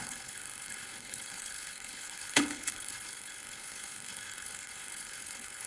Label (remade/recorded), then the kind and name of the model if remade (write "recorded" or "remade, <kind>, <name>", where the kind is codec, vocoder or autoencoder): remade, codec, HILCodec